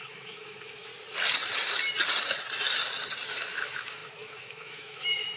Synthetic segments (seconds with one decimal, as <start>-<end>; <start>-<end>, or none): 0.0-0.9; 3.3-5.4